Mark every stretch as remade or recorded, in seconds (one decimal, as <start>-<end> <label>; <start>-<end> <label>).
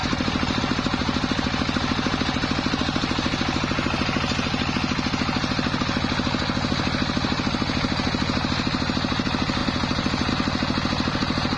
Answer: 0.0-0.6 remade; 0.6-9.6 recorded; 9.6-10.3 remade; 10.3-11.6 recorded